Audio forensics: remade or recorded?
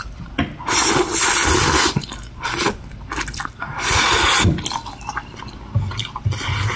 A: recorded